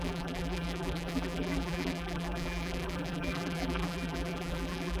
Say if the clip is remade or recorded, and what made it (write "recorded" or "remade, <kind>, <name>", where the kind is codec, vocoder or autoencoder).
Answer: remade, vocoder, BigVGAN v2